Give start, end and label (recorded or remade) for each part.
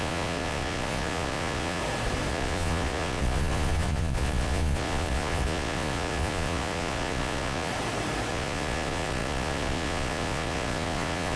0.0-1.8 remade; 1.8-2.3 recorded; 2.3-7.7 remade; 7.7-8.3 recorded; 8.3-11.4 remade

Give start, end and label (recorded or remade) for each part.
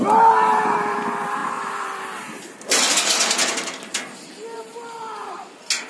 0.0-5.9 recorded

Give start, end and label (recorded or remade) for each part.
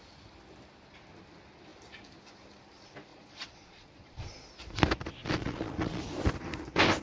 0.0-3.1 recorded; 3.1-4.4 remade; 4.4-5.2 recorded; 5.2-6.0 remade; 6.0-7.0 recorded